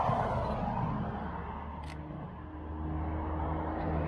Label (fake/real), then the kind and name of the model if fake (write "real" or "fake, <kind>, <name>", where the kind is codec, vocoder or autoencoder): real